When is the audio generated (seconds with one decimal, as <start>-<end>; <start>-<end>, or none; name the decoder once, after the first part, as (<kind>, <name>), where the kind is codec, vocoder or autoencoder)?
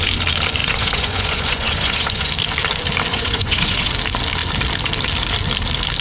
0.6-2.3 (vocoder, Vocos); 3.1-3.9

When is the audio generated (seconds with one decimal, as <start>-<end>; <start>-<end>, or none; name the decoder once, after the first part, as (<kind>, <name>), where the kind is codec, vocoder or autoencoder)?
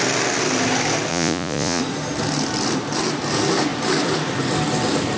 1.1-1.8 (vocoder, Vocos)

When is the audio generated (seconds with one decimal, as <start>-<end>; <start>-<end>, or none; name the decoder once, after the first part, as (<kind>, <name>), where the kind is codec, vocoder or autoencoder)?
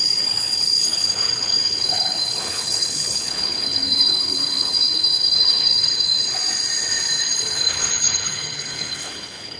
0.0-6.4 (codec, HILCodec); 7.2-9.6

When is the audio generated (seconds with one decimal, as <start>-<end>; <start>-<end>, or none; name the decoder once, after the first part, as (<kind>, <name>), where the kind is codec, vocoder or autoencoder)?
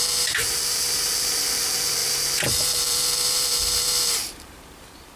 0.0-5.2 (vocoder, BigVGAN v2)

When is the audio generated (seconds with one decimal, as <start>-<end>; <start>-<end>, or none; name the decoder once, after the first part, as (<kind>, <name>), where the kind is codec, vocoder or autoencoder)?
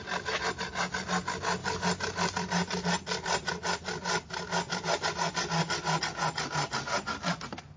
none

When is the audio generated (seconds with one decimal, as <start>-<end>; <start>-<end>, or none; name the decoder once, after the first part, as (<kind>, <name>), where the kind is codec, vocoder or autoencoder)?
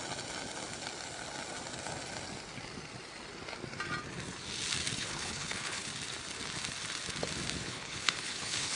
5.0-5.9 (codec, HILCodec); 7.6-8.8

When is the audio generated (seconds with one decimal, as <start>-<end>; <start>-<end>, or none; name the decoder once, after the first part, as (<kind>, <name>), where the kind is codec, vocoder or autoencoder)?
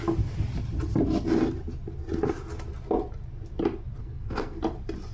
4.0-4.6 (codec, SNAC)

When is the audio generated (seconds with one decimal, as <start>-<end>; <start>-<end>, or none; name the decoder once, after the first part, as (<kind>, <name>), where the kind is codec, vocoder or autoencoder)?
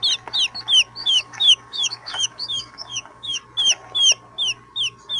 1.0-3.4 (codec, DAC)